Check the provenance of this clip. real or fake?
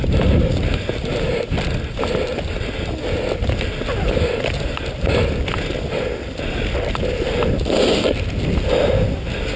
real